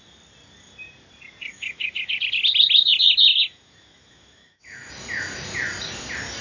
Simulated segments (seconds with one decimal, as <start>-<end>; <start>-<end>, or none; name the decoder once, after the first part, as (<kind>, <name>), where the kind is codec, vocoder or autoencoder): 1.5-2.2 (autoencoder, DAC-VAE); 3.3-4.9